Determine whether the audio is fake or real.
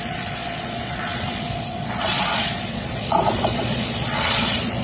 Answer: fake